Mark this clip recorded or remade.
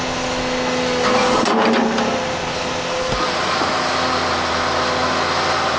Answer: recorded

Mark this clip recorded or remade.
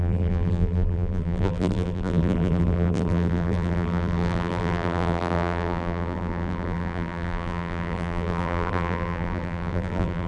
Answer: remade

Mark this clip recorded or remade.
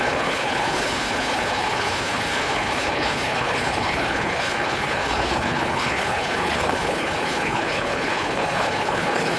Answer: remade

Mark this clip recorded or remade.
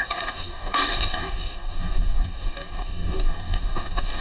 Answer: remade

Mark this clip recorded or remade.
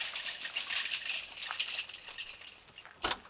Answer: recorded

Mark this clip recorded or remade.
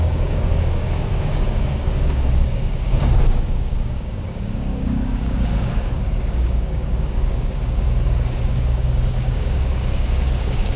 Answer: remade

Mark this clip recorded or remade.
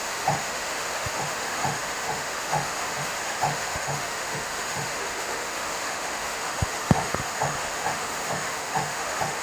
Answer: remade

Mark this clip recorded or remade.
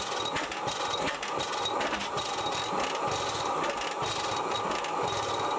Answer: recorded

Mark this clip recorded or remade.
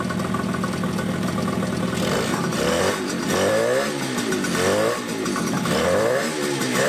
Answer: recorded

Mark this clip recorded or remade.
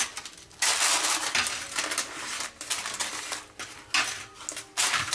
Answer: recorded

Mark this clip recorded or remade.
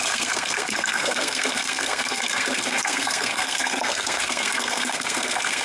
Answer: remade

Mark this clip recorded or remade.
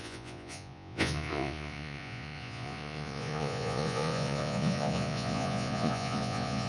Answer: remade